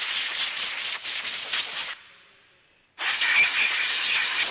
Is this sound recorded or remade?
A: recorded